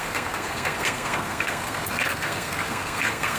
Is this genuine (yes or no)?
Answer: no